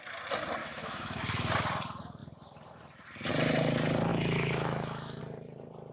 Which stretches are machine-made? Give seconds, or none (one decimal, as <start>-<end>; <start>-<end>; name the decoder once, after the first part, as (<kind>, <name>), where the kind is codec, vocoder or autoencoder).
0.6-1.2 (autoencoder, DAC-VAE); 4.1-5.2